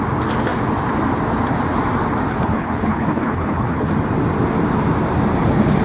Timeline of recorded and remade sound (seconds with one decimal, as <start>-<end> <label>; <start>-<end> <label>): 0.0-2.3 recorded; 2.3-3.9 remade; 3.9-5.8 recorded